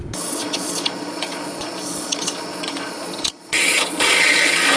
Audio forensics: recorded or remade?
remade